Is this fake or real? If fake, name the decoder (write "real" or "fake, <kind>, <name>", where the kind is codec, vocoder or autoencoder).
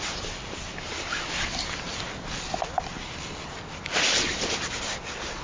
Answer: real